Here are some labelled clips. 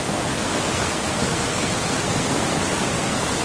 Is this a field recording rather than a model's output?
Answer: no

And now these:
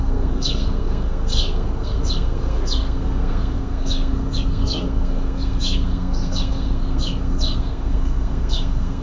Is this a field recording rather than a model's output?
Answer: no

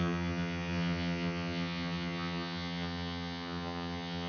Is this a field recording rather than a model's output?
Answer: no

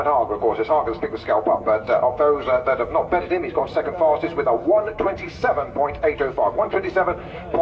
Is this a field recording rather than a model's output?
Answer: no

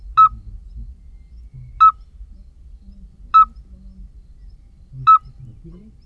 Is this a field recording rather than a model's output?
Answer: yes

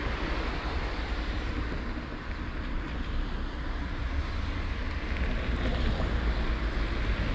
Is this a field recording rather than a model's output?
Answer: yes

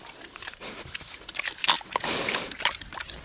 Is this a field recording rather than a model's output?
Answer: yes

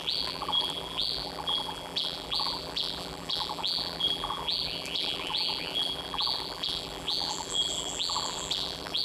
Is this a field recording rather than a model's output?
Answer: no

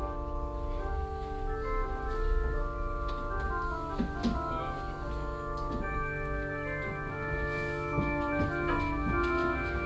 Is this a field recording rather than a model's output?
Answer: yes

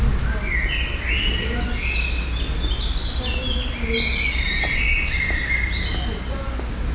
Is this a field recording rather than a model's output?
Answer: yes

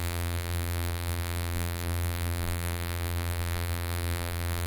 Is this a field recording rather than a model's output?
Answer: no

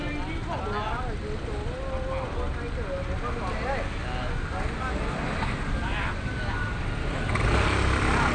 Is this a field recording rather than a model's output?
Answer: yes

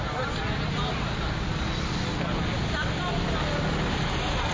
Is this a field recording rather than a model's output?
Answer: yes